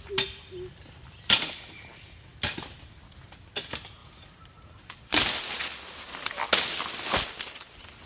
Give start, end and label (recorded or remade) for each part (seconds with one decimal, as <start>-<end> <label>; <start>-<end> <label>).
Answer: 0.0-4.0 recorded; 4.0-6.3 remade; 6.3-8.1 recorded